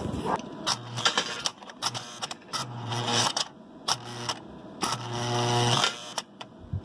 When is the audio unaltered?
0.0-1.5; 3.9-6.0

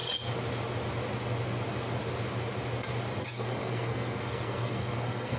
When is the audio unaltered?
0.0-3.2

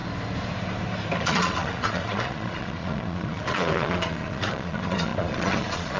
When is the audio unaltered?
0.0-1.2

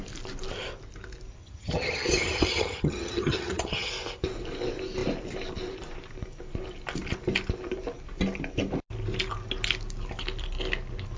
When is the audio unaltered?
0.0-1.4; 3.9-11.2

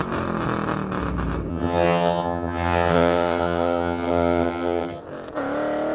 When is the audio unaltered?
0.0-1.5; 5.0-5.9

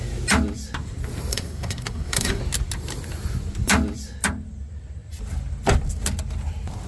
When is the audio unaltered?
0.0-1.3; 2.4-6.9

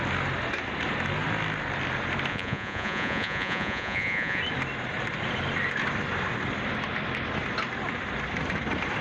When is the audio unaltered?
0.0-2.3; 4.4-9.0